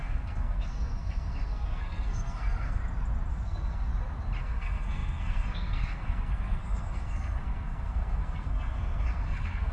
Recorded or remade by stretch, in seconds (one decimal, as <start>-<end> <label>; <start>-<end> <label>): 0.0-2.8 remade; 2.8-3.3 recorded; 3.3-3.9 remade; 3.9-4.4 recorded; 4.4-9.7 remade